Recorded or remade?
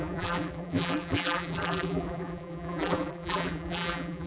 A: remade